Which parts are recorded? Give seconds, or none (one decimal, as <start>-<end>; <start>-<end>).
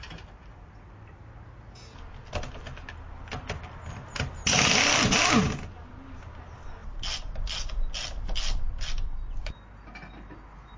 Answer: 0.0-10.8